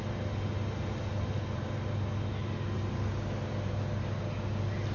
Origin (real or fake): real